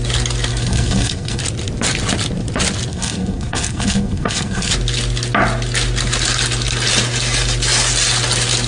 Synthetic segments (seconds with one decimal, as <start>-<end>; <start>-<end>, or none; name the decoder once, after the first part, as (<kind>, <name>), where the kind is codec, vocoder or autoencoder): 0.5-1.4 (codec, SNAC); 2.9-4.7